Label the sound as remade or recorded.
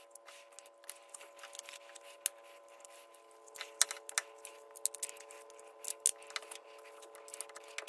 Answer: recorded